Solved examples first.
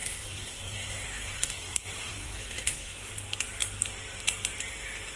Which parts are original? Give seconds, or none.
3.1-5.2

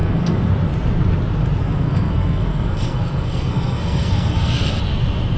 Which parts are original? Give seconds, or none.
0.5-1.6; 4.8-5.4

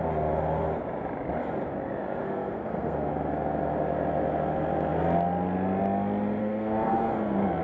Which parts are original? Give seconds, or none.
0.0-2.2; 3.1-6.4; 7.1-7.6